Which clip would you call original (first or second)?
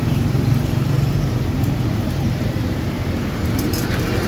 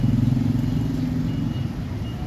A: second